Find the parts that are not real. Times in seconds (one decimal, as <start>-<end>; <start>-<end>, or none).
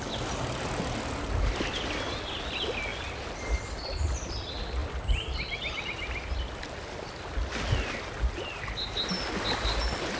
none